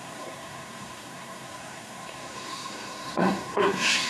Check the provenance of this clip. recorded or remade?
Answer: remade